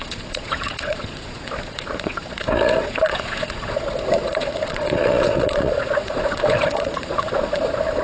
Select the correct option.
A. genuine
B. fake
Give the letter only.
B